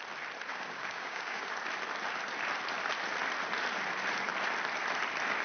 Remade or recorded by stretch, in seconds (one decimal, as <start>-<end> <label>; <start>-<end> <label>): 0.0-0.5 recorded; 0.5-1.5 remade; 1.5-5.4 recorded